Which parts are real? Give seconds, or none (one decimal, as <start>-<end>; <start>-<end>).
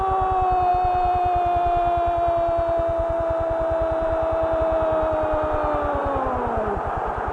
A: 0.0-7.3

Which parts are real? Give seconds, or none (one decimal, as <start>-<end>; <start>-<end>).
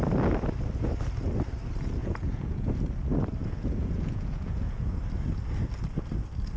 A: 0.0-2.0; 2.8-3.4; 5.0-6.6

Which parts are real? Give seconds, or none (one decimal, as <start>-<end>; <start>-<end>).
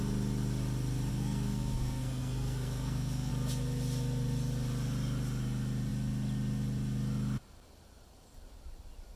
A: 0.0-1.1; 3.3-9.2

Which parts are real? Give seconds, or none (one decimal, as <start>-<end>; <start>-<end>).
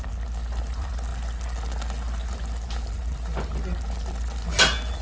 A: 0.0-5.0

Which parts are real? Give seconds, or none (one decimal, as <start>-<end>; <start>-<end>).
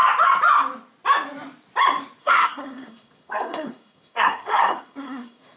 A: 0.0-2.2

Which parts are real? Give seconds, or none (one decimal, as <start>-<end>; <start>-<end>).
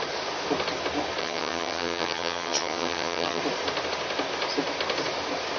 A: 0.0-1.2; 3.4-5.6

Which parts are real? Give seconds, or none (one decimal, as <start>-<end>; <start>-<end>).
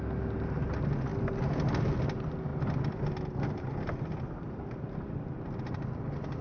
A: 0.0-1.1; 1.7-2.5; 3.1-6.4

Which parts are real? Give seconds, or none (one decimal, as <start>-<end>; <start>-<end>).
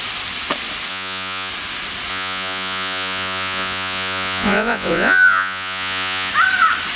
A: 0.0-0.9; 1.5-2.1; 6.3-7.0